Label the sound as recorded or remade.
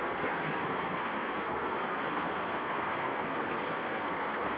remade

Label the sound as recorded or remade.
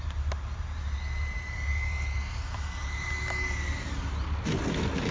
recorded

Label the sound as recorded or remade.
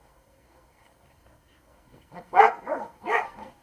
remade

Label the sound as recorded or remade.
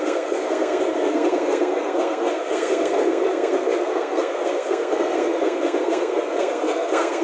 remade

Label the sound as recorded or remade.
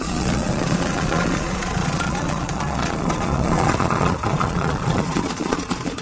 remade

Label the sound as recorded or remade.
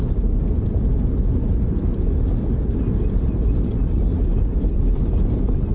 recorded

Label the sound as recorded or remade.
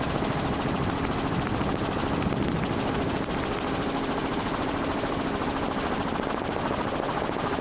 remade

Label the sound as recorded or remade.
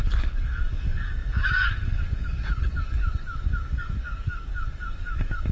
remade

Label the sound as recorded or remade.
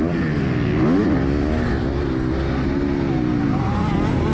recorded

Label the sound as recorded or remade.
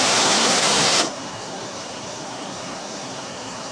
remade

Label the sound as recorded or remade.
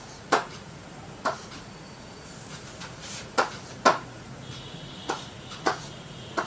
remade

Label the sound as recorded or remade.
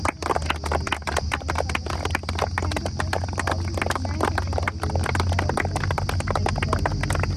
recorded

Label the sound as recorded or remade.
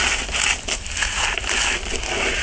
recorded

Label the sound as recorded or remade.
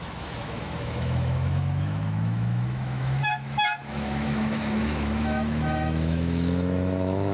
remade